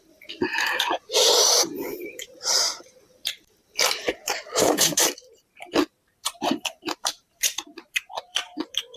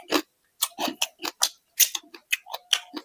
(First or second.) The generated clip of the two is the first